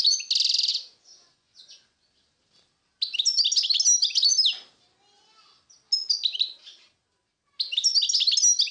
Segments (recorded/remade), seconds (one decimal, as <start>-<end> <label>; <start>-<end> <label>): 0.0-0.7 recorded; 0.7-2.1 remade; 2.1-8.7 recorded